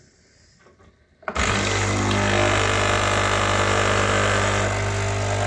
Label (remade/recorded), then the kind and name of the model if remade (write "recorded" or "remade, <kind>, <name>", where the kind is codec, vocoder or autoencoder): recorded